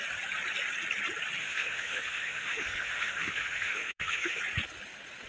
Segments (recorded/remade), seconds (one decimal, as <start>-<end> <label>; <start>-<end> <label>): 0.0-1.4 recorded; 1.4-4.4 remade; 4.4-5.3 recorded